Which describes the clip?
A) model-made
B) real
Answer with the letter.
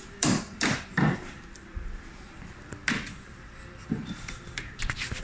A